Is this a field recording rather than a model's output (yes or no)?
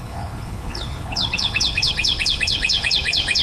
no